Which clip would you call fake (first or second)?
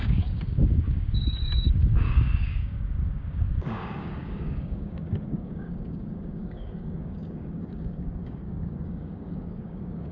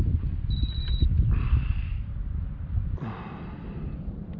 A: first